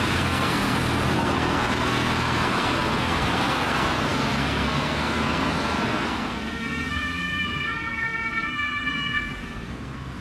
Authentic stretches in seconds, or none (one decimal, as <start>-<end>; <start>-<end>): none